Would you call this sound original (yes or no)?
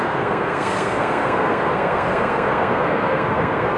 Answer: no